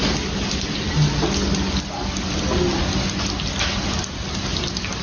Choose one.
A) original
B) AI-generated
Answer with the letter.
A